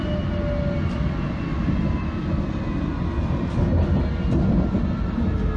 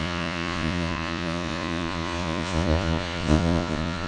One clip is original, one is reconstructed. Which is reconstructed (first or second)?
second